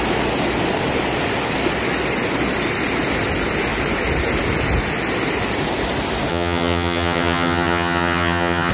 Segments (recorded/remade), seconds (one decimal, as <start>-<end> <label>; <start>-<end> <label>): 0.0-6.3 recorded; 6.3-8.7 remade

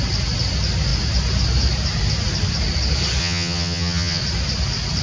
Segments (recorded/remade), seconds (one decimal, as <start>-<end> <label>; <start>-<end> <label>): 0.0-3.2 recorded; 3.2-4.2 remade; 4.2-5.0 recorded

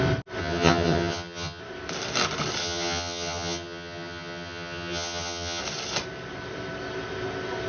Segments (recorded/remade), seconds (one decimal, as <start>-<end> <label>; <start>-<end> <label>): 0.0-0.4 recorded; 0.4-1.6 remade; 1.6-2.6 recorded; 2.6-5.6 remade; 5.6-7.7 recorded

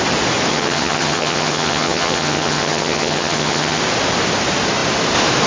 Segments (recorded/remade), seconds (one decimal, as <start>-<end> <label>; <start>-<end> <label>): 0.0-0.5 recorded; 0.5-3.8 remade; 3.8-5.5 recorded

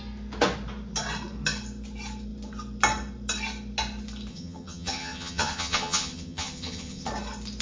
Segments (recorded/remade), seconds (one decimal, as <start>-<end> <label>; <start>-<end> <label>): 0.0-4.3 recorded; 4.3-7.1 remade; 7.1-7.6 recorded

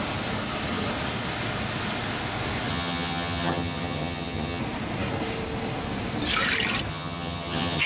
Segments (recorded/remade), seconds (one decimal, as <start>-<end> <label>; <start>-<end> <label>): 0.0-2.7 recorded; 2.7-4.6 remade; 4.6-6.9 recorded; 6.9-7.9 remade